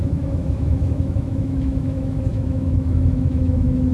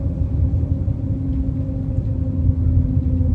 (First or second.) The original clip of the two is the second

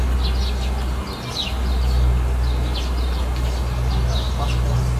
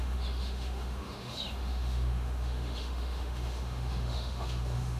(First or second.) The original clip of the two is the first